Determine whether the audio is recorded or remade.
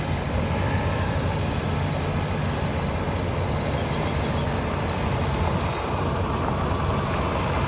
recorded